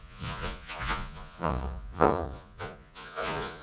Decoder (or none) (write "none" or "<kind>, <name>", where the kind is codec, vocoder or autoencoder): vocoder, Vocos